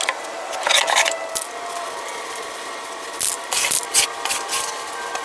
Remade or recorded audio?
recorded